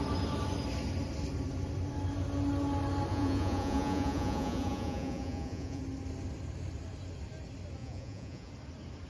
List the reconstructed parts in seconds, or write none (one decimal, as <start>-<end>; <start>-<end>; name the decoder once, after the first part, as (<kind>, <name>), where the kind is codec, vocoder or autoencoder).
3.1-5.8 (vocoder, Vocos); 7.8-8.5